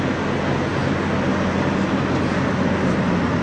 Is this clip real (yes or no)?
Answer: yes